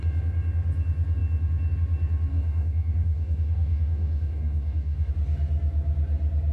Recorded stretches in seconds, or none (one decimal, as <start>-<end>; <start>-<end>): 0.0-2.3; 5.1-6.5